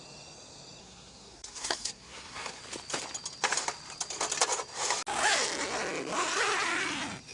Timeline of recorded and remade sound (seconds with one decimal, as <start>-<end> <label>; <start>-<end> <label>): 0.0-0.8 recorded; 0.8-2.6 remade; 2.6-7.3 recorded